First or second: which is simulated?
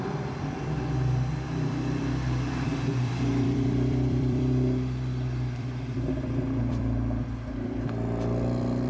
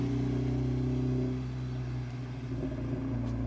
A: first